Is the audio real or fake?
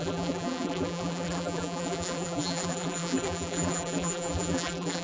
fake